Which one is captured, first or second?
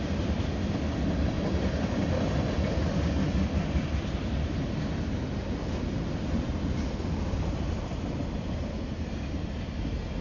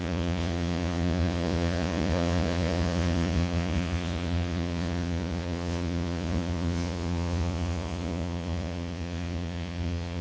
first